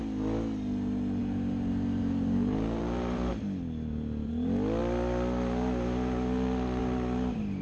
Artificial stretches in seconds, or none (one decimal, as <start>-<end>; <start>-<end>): 1.2-3.3